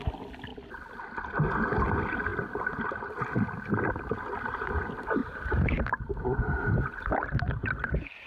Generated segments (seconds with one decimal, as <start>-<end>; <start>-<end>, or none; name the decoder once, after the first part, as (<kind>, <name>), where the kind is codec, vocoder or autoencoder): 5.2-7.1 (vocoder, BigVGAN v2)